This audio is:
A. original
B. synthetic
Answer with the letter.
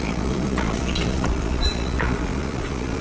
B